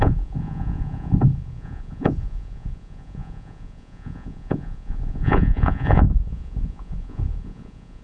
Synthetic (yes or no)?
yes